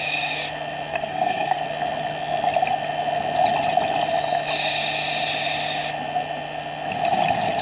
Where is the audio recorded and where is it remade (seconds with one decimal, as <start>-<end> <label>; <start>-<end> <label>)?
0.0-0.9 recorded; 0.9-1.6 remade; 1.6-7.6 recorded